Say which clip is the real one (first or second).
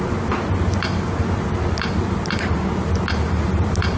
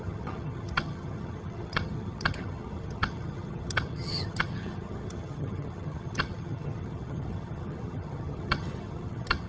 first